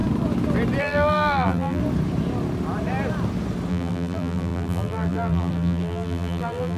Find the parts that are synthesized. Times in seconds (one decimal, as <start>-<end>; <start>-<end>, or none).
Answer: 0.8-1.8; 3.7-6.8